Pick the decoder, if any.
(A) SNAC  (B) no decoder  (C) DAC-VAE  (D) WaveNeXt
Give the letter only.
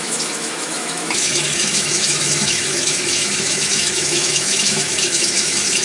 C